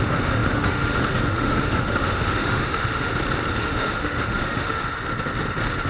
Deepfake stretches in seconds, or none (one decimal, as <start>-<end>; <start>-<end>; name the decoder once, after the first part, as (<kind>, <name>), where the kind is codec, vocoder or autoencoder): 0.0-3.1 (autoencoder, DAC-VAE); 3.6-4.8